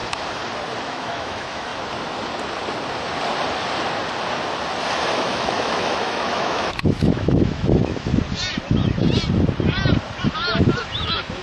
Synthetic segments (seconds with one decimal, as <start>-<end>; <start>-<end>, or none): 0.8-1.7; 5.1-8.1; 10.8-11.4